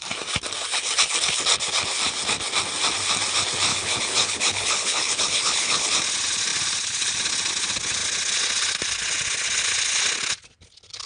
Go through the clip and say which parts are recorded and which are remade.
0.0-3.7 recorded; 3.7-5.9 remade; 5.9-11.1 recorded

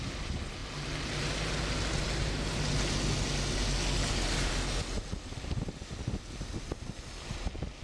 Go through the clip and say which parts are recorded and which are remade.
0.0-7.8 recorded

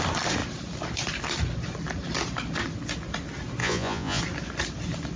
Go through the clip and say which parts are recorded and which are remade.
0.0-3.6 recorded; 3.6-4.2 remade; 4.2-5.2 recorded

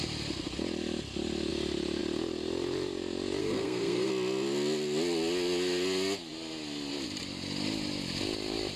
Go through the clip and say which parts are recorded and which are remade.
0.0-3.4 recorded; 3.4-4.1 remade; 4.1-8.8 recorded

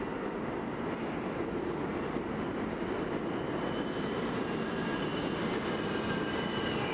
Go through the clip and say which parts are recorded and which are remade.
0.0-6.9 recorded

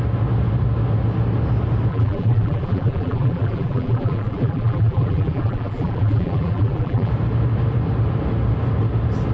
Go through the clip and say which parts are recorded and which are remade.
0.0-1.9 recorded; 1.9-7.1 remade; 7.1-9.3 recorded